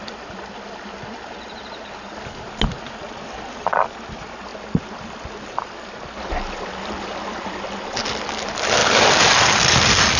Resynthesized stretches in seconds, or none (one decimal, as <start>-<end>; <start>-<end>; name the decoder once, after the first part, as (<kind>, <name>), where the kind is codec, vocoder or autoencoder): none